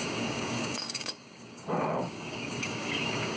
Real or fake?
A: fake